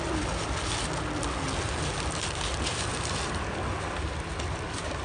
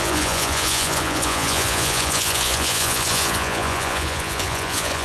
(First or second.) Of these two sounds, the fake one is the second